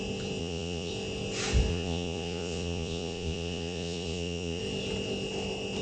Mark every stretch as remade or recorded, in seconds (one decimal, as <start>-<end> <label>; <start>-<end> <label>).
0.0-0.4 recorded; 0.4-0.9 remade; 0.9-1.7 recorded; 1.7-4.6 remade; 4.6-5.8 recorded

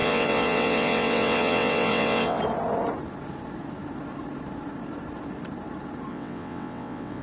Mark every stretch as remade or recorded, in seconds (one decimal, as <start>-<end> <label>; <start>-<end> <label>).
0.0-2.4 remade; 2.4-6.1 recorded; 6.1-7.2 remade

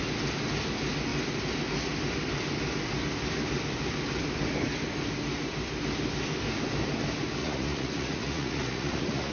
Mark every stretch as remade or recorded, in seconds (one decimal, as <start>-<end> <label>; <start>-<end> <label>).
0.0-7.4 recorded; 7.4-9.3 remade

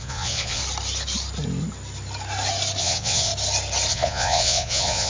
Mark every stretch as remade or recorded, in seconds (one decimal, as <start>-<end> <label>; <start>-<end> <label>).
0.0-0.6 remade; 0.6-2.8 recorded; 2.8-3.3 remade; 3.3-3.9 recorded; 3.9-5.1 remade

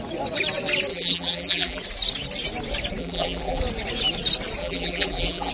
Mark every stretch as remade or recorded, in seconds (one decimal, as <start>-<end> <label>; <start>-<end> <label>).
0.0-0.9 recorded; 0.9-1.8 remade; 1.8-3.0 recorded; 3.0-3.6 remade; 3.6-4.6 recorded; 4.6-5.5 remade

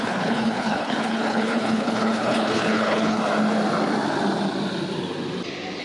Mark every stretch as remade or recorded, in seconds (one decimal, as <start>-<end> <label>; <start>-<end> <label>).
0.0-3.2 remade; 3.2-5.8 recorded

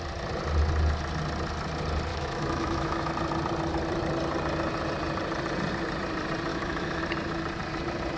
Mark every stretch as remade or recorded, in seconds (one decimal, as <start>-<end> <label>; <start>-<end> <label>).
0.0-2.1 recorded; 2.1-3.1 remade; 3.1-6.5 recorded; 6.5-7.0 remade; 7.0-8.2 recorded